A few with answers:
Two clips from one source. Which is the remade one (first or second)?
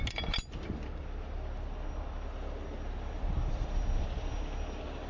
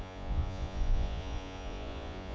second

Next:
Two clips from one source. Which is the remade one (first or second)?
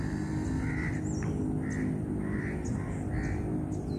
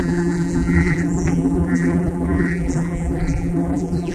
second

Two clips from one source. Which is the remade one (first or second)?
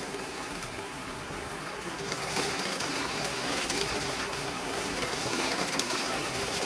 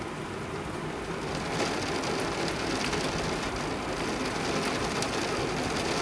first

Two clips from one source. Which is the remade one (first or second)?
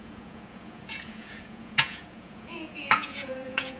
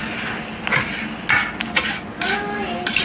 first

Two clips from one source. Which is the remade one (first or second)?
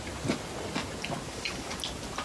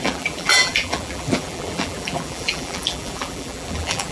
second